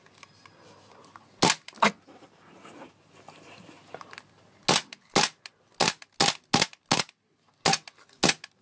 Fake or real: real